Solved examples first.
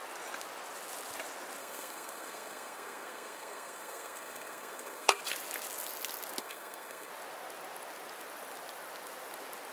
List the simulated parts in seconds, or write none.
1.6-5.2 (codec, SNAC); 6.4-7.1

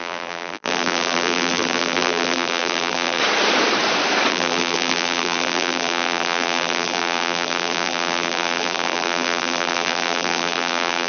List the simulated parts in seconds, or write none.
0.0-3.2 (vocoder, BigVGAN v2); 4.3-11.1

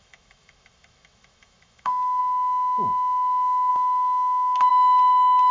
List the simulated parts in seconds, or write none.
0.0-2.2 (autoencoder, DAC-VAE); 3.7-5.5

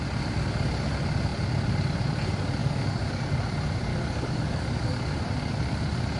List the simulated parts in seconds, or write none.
2.6-3.2 (codec, DAC); 3.9-5.2

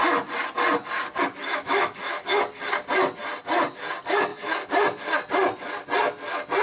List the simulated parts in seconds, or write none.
1.4-2.4 (autoencoder, DAC-VAE)

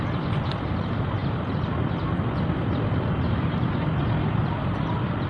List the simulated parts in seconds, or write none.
none